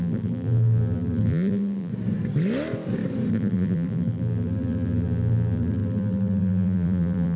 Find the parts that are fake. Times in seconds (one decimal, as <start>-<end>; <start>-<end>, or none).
0.0-1.9; 3.3-7.4